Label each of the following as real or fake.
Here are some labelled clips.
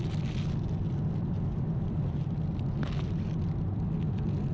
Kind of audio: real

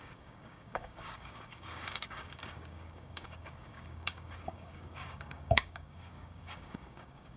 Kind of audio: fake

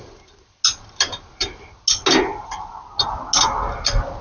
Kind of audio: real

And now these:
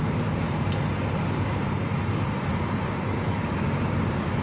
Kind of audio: real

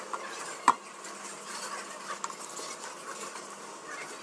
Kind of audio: real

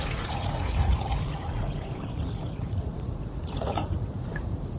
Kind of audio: fake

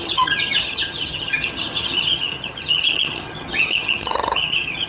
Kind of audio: fake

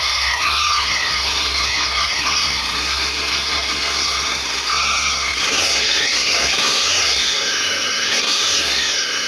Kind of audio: fake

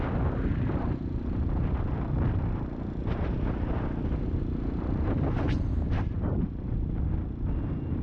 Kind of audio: real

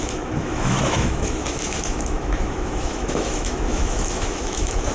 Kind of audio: fake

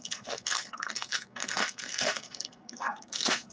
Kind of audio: fake